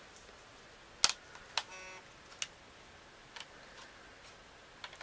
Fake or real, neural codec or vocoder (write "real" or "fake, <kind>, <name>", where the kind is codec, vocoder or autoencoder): real